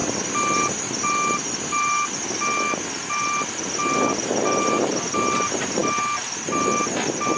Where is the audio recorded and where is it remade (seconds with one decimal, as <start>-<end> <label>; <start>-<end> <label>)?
0.0-7.4 recorded